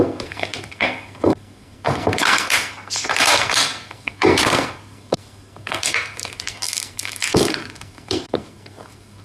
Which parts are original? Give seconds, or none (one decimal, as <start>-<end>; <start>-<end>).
none